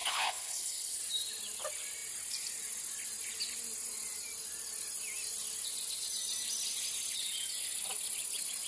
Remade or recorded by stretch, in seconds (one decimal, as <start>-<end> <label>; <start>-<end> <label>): 0.0-1.0 remade; 1.0-8.7 recorded